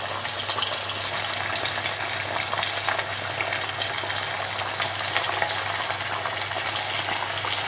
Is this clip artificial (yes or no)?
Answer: no